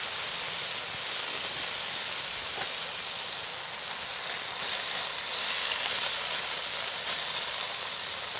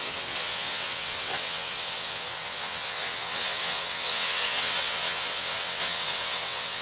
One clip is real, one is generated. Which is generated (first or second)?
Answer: second